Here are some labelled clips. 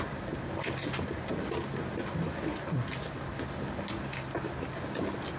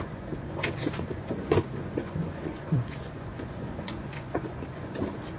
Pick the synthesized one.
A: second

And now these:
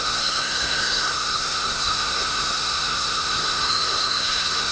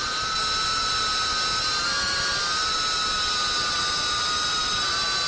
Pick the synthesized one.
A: first